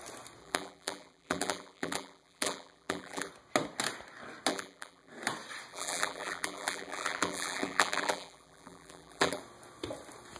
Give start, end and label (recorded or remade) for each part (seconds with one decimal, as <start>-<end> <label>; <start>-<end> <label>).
0.0-0.4 recorded; 0.4-3.3 remade; 3.3-4.5 recorded; 4.5-5.1 remade; 5.1-5.7 recorded; 5.7-9.4 remade; 9.4-10.4 recorded